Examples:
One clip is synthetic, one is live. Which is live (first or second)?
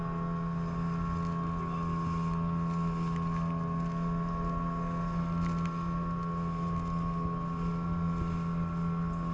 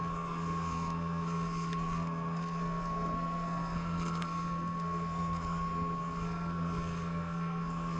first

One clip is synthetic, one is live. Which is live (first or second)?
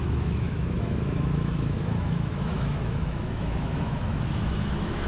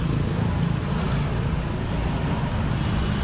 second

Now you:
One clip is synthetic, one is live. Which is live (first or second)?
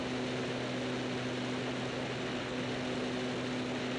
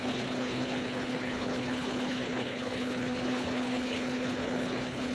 first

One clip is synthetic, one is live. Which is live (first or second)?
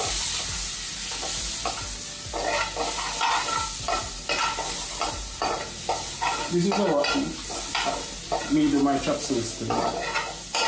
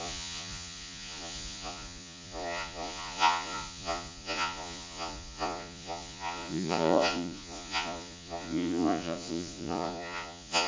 first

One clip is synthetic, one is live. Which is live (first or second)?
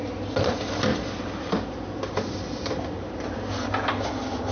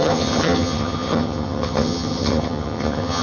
first